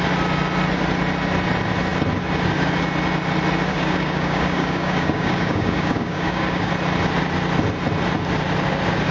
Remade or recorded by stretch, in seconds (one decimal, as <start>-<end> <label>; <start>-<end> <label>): 0.0-3.7 recorded; 3.7-6.7 remade; 6.7-9.1 recorded